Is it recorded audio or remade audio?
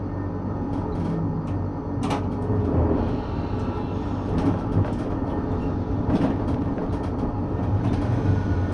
recorded